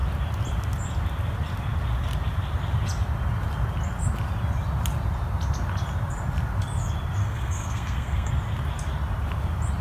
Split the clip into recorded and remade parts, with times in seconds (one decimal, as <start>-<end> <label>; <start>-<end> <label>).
0.0-7.2 recorded; 7.2-8.3 remade; 8.3-9.8 recorded